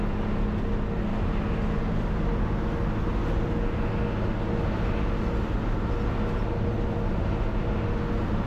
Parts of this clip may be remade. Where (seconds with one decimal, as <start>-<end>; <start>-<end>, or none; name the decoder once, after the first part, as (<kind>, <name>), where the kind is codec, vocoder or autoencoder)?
none